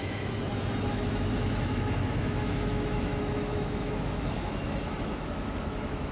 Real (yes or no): no